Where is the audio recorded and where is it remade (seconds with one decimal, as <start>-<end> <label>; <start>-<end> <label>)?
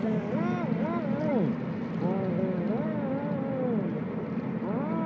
0.0-5.1 recorded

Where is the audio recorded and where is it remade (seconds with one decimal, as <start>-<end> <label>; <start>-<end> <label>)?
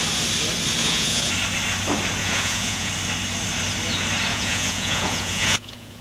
0.0-0.8 recorded; 0.8-1.3 remade; 1.3-2.2 recorded; 2.2-2.9 remade; 2.9-4.3 recorded; 4.3-6.0 remade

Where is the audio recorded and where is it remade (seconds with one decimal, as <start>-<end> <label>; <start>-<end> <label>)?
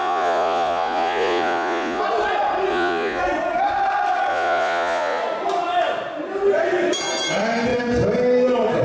0.0-2.0 remade; 2.0-2.7 recorded; 2.7-3.2 remade; 3.2-4.3 recorded; 4.3-5.2 remade; 5.2-8.8 recorded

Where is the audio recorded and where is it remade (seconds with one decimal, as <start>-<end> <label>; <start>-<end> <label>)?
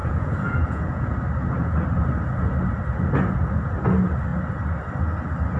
0.0-1.1 remade; 1.1-5.6 recorded